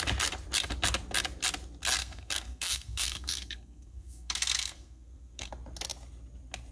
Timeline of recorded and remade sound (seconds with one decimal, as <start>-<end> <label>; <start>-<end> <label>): 0.0-2.0 recorded; 2.0-5.5 remade; 5.5-6.7 recorded